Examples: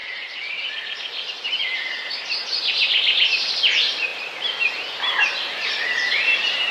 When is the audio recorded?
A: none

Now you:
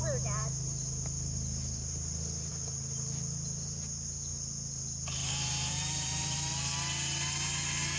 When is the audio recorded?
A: 0.0-0.4; 2.5-4.3; 4.8-5.2; 6.5-8.0

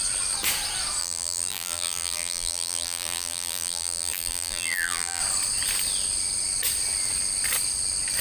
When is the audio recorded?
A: 0.0-1.0; 5.2-8.2

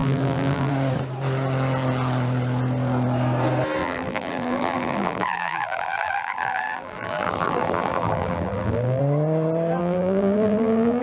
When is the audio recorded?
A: 0.7-3.8; 9.0-9.8

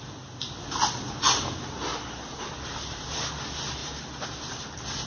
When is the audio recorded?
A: 0.0-1.9; 2.4-3.8; 4.6-5.1

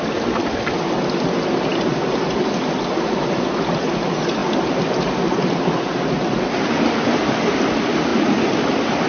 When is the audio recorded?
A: 0.0-9.1